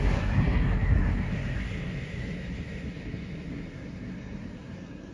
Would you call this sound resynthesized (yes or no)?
yes